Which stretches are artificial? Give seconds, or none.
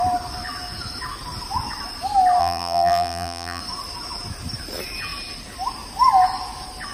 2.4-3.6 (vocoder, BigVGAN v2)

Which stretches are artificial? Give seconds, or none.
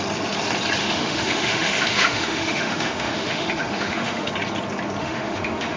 0.8-4.3 (autoencoder, DAC-VAE); 5.0-5.8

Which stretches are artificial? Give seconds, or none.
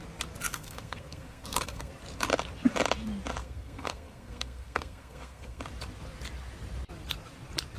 0.5-1.9 (codec, SNAC); 3.4-5.6